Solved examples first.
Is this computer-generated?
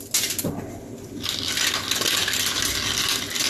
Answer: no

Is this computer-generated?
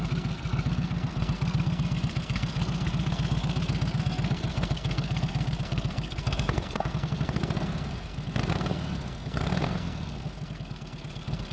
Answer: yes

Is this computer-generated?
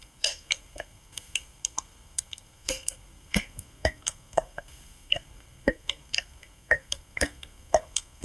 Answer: yes